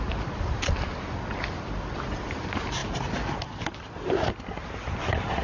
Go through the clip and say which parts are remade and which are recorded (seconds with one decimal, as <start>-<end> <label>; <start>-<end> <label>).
0.0-5.4 recorded